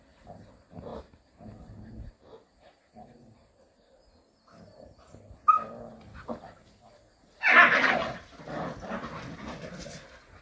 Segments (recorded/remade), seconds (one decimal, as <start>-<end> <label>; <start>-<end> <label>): 0.0-10.4 recorded